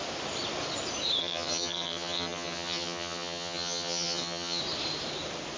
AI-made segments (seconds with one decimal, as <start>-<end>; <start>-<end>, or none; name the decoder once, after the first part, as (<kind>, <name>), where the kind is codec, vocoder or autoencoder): 1.2-4.6 (vocoder, HiFi-GAN)